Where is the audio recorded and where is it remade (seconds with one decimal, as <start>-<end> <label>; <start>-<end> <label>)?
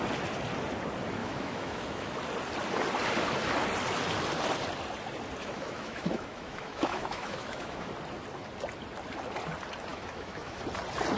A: 0.0-1.2 recorded; 1.2-2.2 remade; 2.2-5.4 recorded; 5.4-7.9 remade; 7.9-9.9 recorded; 9.9-10.6 remade; 10.6-11.2 recorded